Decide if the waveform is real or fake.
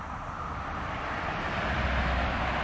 real